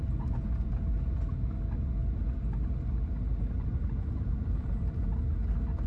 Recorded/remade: recorded